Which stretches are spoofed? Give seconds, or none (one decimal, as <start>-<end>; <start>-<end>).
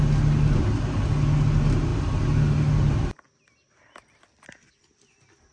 none